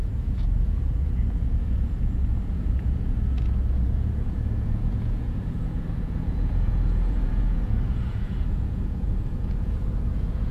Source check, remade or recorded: remade